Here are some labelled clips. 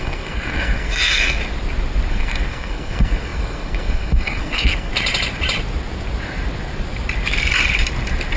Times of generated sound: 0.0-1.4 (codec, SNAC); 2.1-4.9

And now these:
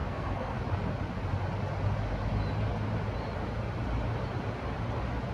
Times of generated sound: 0.0-0.6 (codec, SNAC)

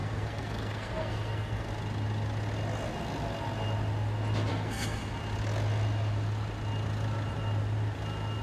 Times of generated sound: 0.0-1.7 (codec, SNAC); 4.5-5.0